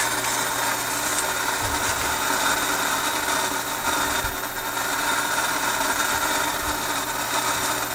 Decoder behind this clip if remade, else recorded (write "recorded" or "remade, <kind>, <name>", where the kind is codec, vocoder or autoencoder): recorded